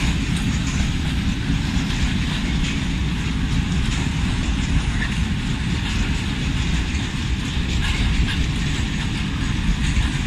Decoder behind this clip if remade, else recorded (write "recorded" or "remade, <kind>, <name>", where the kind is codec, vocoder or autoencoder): recorded